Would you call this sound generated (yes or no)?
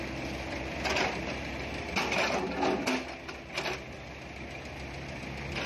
no